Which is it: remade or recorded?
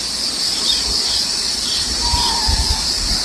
recorded